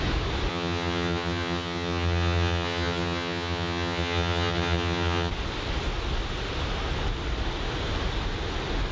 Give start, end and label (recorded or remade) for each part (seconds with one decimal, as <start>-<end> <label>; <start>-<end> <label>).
0.0-0.5 recorded; 0.5-5.3 remade; 5.3-8.9 recorded